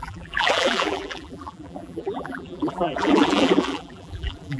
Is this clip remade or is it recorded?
remade